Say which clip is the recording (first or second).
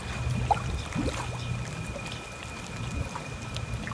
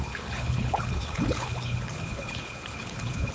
first